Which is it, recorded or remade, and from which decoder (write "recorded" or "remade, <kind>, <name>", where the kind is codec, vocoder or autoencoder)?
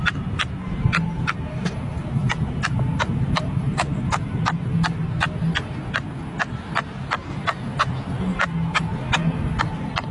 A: recorded